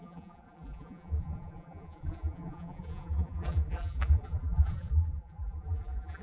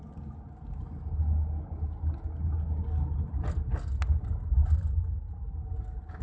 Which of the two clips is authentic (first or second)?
second